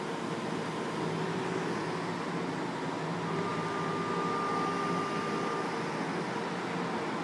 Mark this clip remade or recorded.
recorded